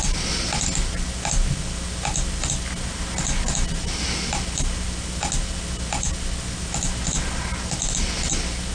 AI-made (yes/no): no